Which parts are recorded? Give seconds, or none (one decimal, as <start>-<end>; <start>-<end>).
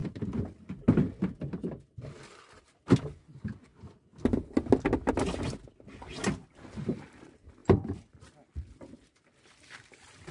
0.0-7.6; 8.2-10.3